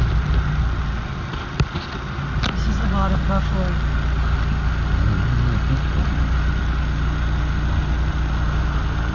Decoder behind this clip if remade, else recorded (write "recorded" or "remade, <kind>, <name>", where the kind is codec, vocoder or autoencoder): recorded